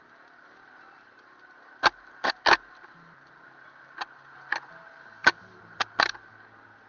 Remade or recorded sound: recorded